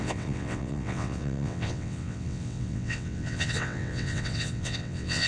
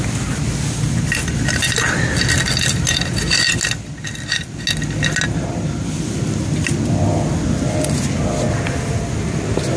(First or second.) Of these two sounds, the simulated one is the first